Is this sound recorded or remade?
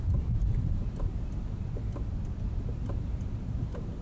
remade